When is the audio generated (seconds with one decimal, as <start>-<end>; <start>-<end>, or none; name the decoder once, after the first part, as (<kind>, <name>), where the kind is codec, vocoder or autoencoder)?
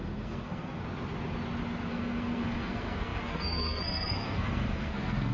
0.0-0.8 (codec, SNAC); 1.9-5.3